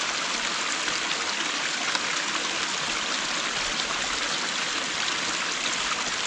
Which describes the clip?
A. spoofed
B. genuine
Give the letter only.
B